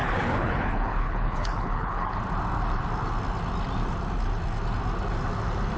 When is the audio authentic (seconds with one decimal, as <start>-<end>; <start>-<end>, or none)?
2.1-5.8

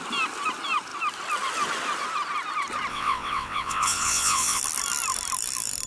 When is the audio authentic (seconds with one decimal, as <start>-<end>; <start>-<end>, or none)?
0.0-2.9; 4.6-5.9

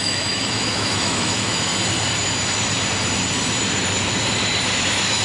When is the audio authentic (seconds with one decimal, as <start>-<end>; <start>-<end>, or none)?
1.7-4.8

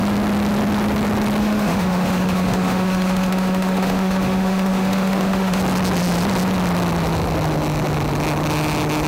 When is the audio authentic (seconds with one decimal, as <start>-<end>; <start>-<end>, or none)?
0.0-1.4; 5.6-9.1

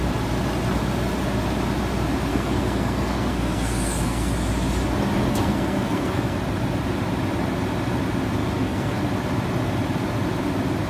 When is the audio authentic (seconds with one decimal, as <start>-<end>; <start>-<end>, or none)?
0.0-2.3; 4.3-5.3; 6.4-8.4; 9.0-10.9

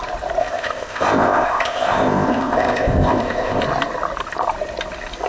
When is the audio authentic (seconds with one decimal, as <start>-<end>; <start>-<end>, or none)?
0.0-0.4; 3.6-5.3

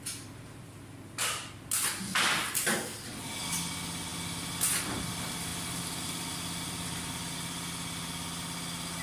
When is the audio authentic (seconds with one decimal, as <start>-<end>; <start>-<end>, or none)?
0.0-9.0

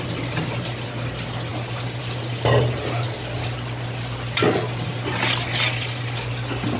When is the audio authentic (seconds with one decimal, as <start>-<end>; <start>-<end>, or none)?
0.0-6.8